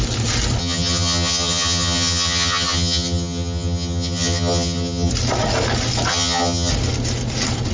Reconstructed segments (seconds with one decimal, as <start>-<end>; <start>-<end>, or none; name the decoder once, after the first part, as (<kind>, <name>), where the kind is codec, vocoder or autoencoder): 0.6-5.1 (vocoder, HiFi-GAN); 6.1-6.7